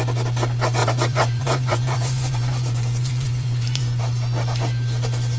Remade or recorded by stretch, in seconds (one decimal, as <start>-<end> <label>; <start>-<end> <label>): 0.0-0.8 recorded; 0.8-4.0 remade; 4.0-5.4 recorded